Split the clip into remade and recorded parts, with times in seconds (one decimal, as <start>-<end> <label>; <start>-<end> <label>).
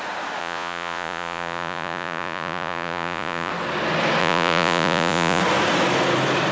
0.0-0.4 recorded; 0.4-3.5 remade; 3.5-4.2 recorded; 4.2-5.4 remade; 5.4-6.5 recorded